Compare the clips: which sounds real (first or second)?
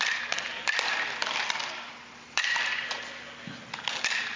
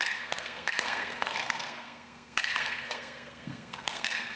first